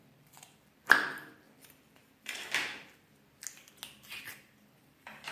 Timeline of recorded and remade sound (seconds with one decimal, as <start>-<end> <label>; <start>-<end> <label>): 0.0-3.1 remade; 3.1-5.3 recorded

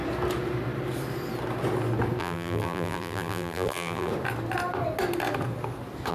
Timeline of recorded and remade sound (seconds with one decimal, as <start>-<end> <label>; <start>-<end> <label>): 0.0-2.2 recorded; 2.2-4.1 remade; 4.1-6.1 recorded

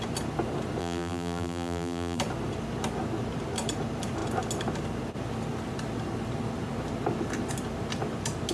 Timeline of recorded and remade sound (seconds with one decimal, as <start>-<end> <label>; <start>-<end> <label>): 0.0-0.8 recorded; 0.8-2.2 remade; 2.2-8.5 recorded

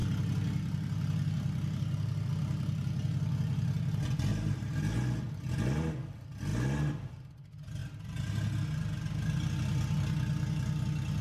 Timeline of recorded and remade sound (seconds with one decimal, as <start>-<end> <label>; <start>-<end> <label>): 0.0-4.3 recorded; 4.3-4.8 remade; 4.8-11.2 recorded

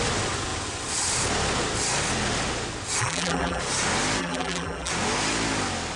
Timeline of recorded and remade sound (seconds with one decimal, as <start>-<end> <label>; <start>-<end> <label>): 0.0-3.0 recorded; 3.0-3.6 remade; 3.6-4.2 recorded; 4.2-4.9 remade; 4.9-6.0 recorded